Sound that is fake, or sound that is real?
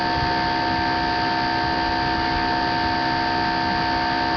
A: real